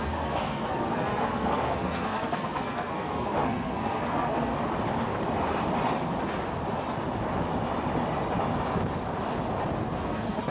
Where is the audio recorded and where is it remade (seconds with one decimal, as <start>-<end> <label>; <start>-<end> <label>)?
0.0-4.5 remade; 4.5-9.8 recorded; 9.8-10.5 remade